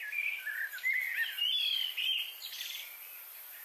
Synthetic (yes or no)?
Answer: yes